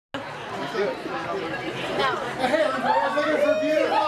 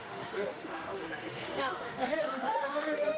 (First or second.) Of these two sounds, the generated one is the second